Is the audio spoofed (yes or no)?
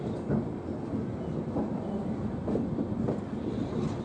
no